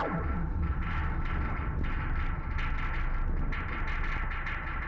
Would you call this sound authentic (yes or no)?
yes